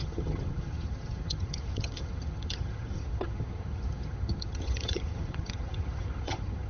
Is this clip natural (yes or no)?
no